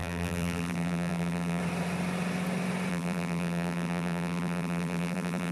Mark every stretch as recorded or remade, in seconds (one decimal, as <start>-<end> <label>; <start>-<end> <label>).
0.0-1.6 remade; 1.6-2.9 recorded; 2.9-5.5 remade